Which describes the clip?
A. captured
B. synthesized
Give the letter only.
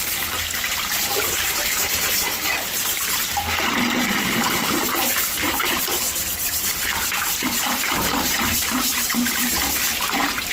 B